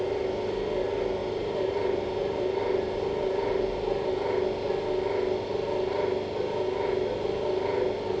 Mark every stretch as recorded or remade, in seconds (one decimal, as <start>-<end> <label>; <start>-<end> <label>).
0.0-1.2 recorded; 1.2-4.1 remade; 4.1-8.2 recorded